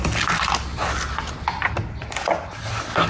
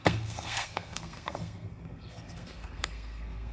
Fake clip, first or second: second